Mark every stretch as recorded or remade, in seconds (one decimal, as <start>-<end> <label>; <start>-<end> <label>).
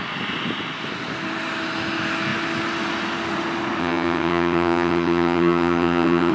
0.0-3.8 recorded; 3.8-6.3 remade